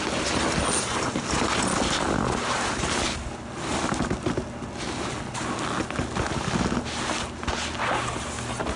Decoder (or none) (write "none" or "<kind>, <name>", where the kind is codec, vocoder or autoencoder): none